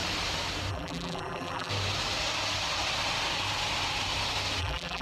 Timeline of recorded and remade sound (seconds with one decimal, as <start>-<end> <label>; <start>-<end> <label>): 0.0-0.7 recorded; 0.7-1.7 remade; 1.7-4.6 recorded; 4.6-5.0 remade